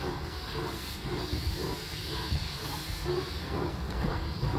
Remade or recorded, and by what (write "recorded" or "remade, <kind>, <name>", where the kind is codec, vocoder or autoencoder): remade, codec, SNAC